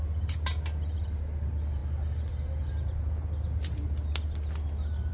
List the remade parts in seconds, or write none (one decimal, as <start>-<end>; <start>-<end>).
none